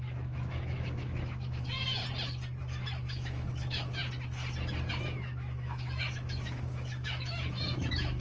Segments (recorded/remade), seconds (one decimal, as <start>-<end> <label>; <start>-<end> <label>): 0.0-2.0 remade; 2.0-2.6 recorded; 2.6-4.0 remade; 4.0-4.9 recorded; 4.9-8.2 remade